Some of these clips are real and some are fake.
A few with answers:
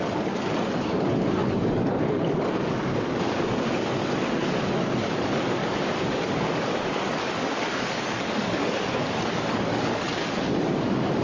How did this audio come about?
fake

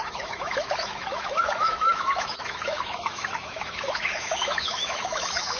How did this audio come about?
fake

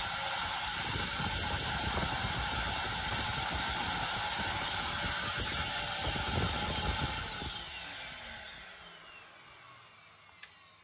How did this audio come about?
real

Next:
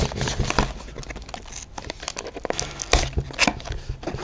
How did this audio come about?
real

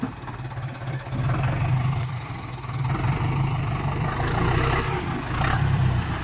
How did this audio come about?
fake